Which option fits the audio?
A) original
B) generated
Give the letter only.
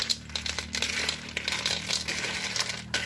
A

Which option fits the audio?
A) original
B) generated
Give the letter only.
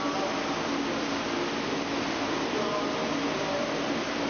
A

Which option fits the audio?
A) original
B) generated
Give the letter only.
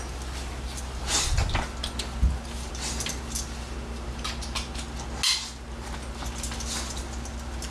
A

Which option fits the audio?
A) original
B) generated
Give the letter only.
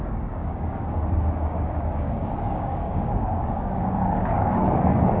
B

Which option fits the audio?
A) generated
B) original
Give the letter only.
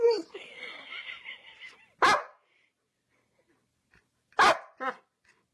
B